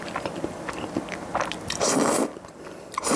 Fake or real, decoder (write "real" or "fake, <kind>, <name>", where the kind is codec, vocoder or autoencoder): fake, vocoder, BigVGAN v2